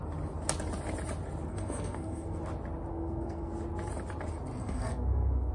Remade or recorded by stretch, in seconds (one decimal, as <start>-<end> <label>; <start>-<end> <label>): 0.0-1.5 recorded; 1.5-2.4 remade; 2.4-2.9 recorded; 2.9-3.5 remade; 3.5-4.6 recorded; 4.6-5.5 remade

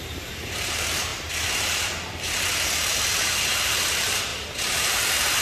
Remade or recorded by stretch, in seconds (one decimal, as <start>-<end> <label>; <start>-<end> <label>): 0.0-5.4 remade

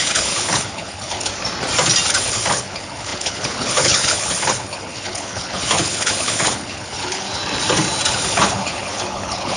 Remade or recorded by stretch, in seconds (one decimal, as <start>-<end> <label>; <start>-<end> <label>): 0.0-1.3 remade; 1.3-2.2 recorded; 2.2-7.4 remade; 7.4-8.1 recorded; 8.1-9.6 remade

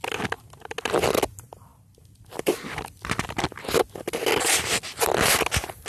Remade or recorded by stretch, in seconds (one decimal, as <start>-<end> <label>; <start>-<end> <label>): 0.0-5.9 recorded

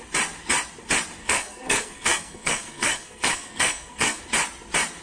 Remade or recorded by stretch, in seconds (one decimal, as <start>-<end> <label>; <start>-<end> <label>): 0.0-1.2 recorded; 1.2-4.2 remade; 4.2-5.0 recorded